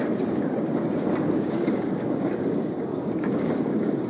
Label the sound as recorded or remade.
remade